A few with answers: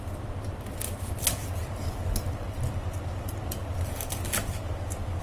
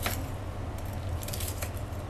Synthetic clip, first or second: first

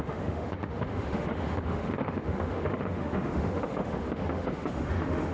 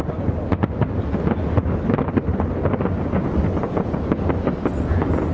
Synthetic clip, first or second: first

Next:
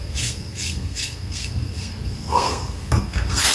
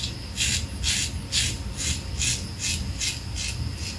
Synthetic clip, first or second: first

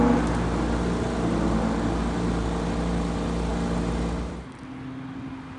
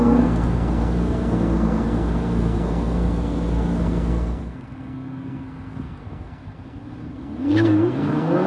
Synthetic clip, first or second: second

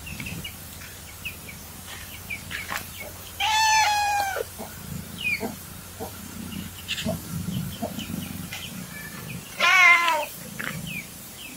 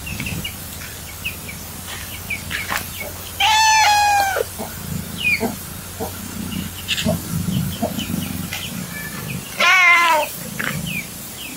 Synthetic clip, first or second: first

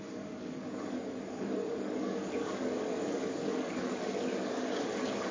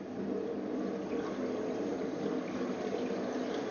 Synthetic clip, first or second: first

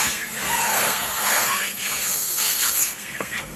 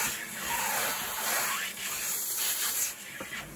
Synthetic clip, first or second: first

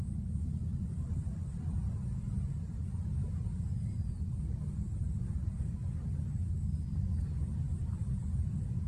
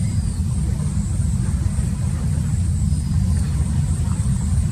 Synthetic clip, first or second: second